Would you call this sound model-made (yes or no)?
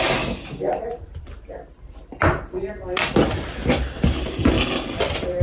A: yes